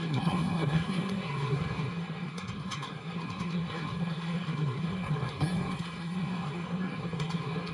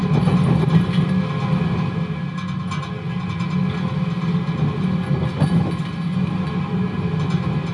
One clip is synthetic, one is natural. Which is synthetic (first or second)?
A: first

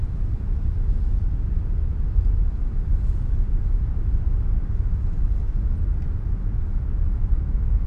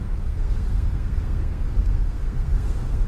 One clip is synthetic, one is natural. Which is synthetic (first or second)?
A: second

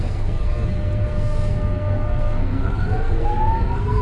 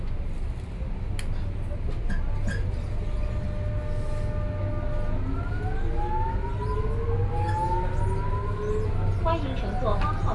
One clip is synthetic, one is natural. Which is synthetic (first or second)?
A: first